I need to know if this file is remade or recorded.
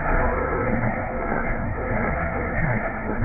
remade